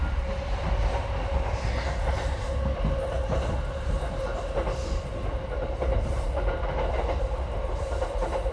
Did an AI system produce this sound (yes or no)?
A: no